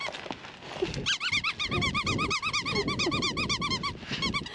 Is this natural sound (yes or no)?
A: yes